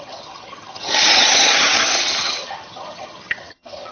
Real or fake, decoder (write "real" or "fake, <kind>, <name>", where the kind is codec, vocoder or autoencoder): fake, vocoder, HiFi-GAN